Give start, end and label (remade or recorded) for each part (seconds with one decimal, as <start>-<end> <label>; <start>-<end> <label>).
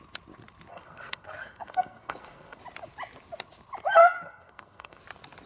0.0-0.7 recorded; 0.7-2.6 remade; 2.6-4.0 recorded; 4.0-5.0 remade; 5.0-5.5 recorded